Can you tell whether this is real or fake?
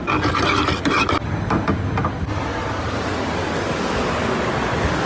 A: real